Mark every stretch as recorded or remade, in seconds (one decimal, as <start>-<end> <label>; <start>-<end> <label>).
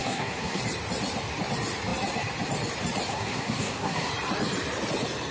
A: 0.0-0.6 remade; 0.6-3.1 recorded; 3.1-4.1 remade; 4.1-5.3 recorded